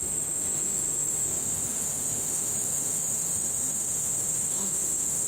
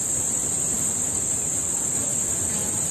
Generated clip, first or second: first